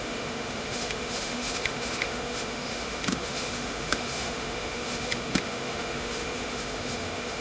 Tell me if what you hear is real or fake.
fake